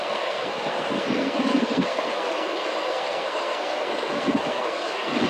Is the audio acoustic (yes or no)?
no